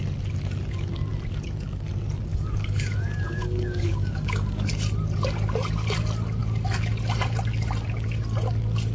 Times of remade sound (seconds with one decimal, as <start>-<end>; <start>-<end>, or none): 2.3-4.7